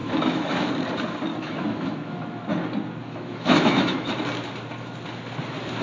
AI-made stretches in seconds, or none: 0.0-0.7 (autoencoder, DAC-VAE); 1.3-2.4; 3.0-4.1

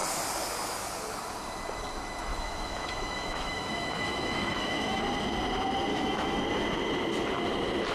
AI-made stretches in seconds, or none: 2.3-5.0 (autoencoder, DAC-VAE); 5.9-6.4

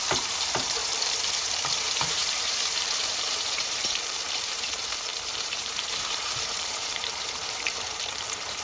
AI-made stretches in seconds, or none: 0.0-8.6 (vocoder, BigVGAN v2)

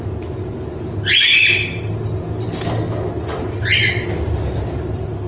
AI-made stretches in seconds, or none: 1.3-1.9 (vocoder, BigVGAN v2); 3.4-3.9

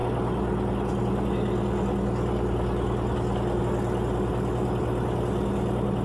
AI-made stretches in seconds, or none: none